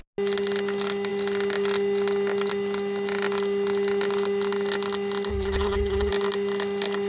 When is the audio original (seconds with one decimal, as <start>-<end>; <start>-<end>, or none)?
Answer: 0.0-5.3; 6.1-7.1